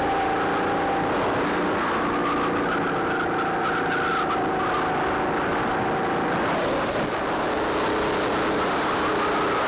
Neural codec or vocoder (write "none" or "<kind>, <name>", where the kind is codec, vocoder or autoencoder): none